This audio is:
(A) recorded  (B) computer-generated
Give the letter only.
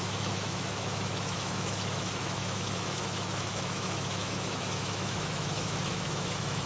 B